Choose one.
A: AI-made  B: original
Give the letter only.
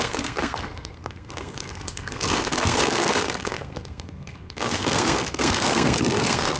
A